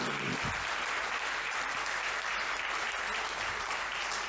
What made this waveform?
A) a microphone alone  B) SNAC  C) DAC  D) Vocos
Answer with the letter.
A